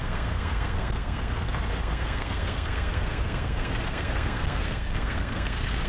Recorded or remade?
remade